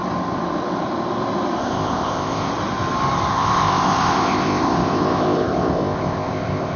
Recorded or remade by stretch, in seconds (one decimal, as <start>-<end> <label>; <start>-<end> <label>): 0.0-1.6 recorded; 1.6-2.5 remade; 2.5-3.3 recorded; 3.3-6.8 remade